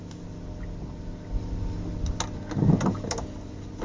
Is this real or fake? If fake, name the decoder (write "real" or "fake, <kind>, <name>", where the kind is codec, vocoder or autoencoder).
real